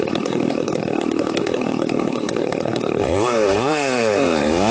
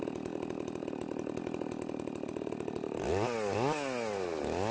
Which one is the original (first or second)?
second